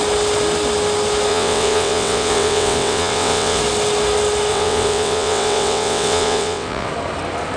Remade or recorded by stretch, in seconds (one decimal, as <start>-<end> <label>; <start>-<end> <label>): 0.0-1.3 recorded; 1.3-3.6 remade; 3.6-4.5 recorded; 4.5-6.9 remade; 6.9-7.6 recorded